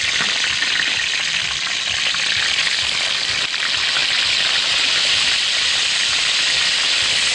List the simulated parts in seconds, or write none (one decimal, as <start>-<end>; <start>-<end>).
none